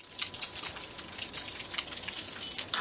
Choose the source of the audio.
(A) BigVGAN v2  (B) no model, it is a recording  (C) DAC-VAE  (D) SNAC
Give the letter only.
B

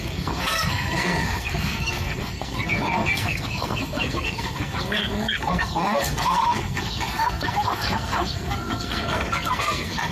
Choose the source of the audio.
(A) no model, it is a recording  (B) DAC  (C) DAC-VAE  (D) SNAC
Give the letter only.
D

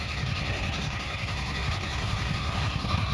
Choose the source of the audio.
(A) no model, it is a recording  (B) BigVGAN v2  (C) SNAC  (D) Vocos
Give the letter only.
C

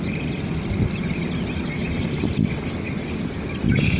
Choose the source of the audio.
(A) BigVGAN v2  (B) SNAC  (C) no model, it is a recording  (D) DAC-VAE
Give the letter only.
C